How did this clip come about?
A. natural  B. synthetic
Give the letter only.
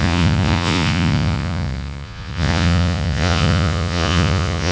B